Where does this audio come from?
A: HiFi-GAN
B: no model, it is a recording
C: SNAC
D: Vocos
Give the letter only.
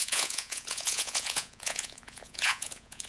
D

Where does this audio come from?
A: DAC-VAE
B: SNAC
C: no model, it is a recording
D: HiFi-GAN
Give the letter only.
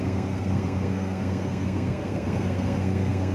B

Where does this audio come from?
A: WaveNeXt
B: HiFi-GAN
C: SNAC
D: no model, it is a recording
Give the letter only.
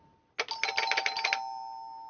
D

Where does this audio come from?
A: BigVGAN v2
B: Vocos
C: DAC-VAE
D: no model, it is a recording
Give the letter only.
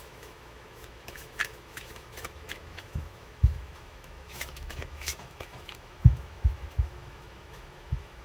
C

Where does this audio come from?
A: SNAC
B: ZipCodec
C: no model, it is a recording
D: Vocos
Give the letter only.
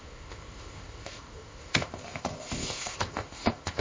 B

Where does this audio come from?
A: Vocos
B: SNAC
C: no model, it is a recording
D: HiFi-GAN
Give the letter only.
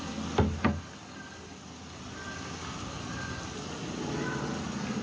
C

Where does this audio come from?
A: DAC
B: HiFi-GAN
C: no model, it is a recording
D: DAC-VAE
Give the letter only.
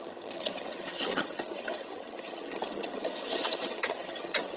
B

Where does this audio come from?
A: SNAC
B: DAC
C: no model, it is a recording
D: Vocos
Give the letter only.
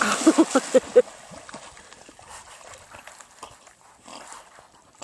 C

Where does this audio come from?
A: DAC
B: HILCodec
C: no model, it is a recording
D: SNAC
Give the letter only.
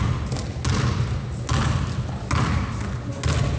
C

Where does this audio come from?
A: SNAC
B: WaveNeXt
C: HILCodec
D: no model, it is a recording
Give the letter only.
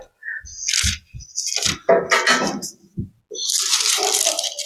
D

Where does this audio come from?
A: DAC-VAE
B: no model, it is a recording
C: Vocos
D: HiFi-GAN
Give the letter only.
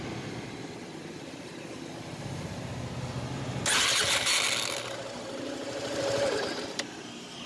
B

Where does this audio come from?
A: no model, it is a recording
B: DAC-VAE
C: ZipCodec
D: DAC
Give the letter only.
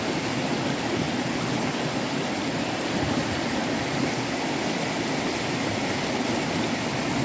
A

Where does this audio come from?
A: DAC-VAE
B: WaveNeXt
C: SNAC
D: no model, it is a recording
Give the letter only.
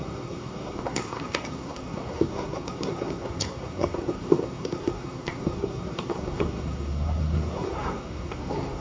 C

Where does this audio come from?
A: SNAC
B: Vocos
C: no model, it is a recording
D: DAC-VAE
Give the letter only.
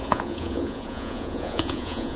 B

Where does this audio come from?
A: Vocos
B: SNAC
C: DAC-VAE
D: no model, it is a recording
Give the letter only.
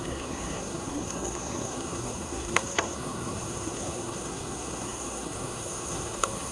B